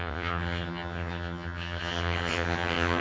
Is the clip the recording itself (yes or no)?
no